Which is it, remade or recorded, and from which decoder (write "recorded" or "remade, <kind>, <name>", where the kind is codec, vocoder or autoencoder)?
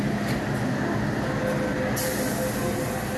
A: recorded